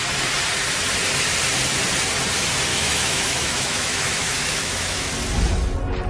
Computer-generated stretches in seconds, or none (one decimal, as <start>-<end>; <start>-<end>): 2.7-5.1